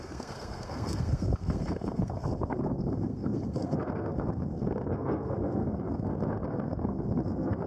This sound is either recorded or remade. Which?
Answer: remade